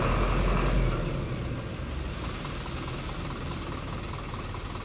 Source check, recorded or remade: recorded